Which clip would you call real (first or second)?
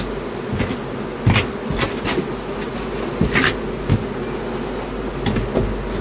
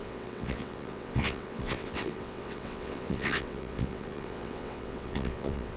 first